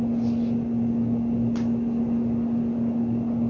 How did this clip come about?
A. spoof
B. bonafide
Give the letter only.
B